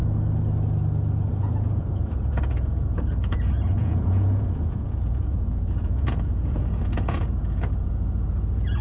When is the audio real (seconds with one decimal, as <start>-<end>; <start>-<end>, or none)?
0.0-1.3